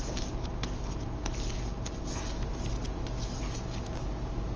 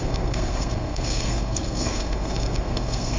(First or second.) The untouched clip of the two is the first